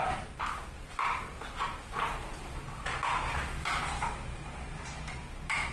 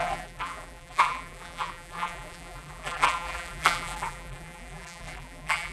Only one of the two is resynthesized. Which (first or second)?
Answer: second